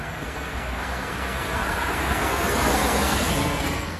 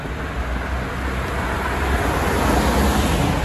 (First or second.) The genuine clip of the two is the second